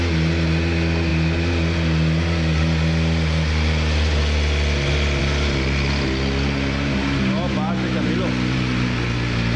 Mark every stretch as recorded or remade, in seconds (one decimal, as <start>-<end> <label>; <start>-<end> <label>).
0.0-9.6 recorded